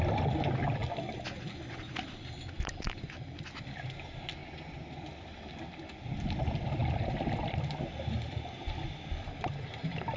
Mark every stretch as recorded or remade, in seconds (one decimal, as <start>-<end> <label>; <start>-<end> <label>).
0.0-10.2 recorded